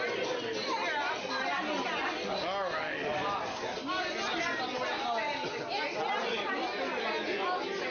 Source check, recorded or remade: recorded